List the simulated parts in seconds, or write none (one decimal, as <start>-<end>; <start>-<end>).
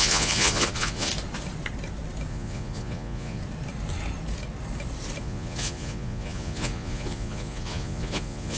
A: 0.0-1.1; 2.3-3.4; 5.2-8.6